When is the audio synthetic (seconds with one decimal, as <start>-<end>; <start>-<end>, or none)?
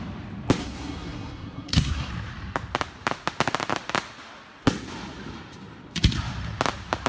0.6-2.1